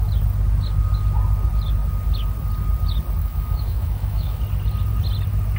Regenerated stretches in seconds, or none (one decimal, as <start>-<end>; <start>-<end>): 3.2-4.4

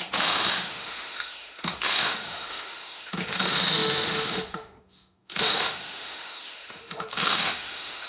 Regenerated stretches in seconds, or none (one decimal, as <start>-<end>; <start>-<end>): 0.0-8.1

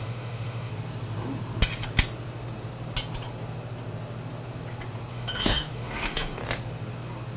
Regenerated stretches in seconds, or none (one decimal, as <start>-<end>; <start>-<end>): 0.0-0.7; 5.1-6.4

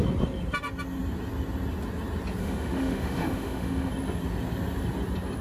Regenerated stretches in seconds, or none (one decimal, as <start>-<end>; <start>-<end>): 2.4-3.9

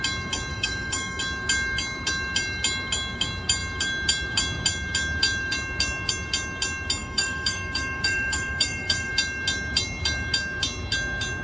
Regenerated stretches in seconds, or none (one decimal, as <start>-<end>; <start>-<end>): 0.5-1.2; 7.0-9.1

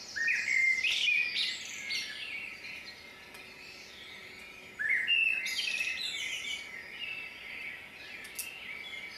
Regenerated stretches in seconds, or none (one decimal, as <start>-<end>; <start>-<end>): none

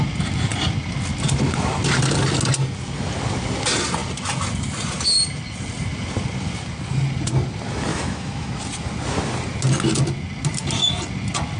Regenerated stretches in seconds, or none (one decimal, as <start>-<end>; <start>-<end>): 7.9-8.5